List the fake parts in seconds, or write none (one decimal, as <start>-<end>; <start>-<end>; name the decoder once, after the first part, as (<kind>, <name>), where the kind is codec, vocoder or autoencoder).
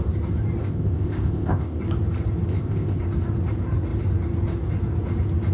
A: 0.6-1.8 (codec, ZipCodec); 2.5-3.0